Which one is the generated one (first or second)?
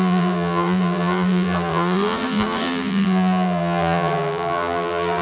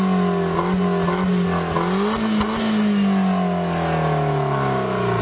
first